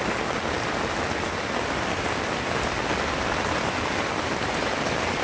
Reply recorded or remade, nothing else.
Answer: recorded